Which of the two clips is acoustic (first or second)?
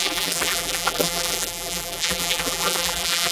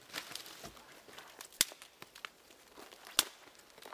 second